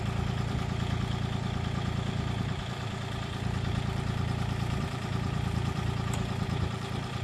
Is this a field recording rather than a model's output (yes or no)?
no